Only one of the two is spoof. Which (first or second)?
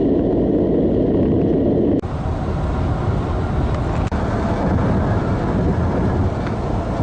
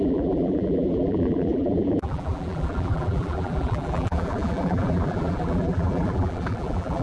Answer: second